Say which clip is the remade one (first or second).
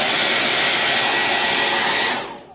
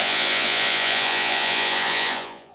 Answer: second